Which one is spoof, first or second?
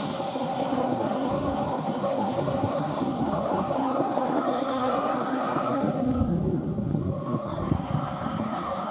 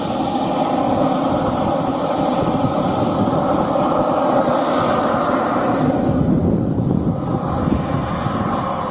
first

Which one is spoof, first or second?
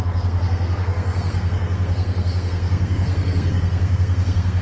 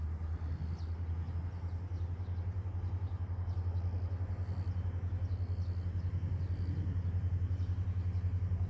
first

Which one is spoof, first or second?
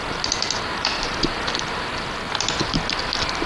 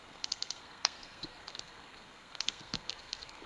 second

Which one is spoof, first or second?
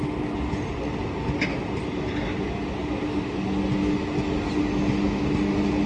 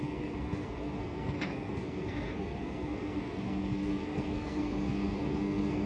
second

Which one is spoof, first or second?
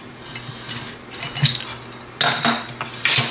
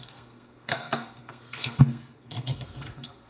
second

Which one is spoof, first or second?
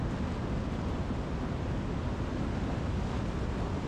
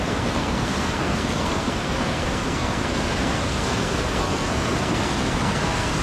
second